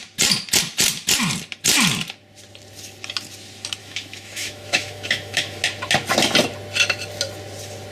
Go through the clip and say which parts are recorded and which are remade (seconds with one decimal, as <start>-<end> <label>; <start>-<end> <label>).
0.0-3.8 recorded; 3.8-5.6 remade; 5.6-7.9 recorded